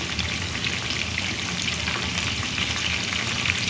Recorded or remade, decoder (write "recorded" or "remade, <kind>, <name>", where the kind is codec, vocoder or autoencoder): recorded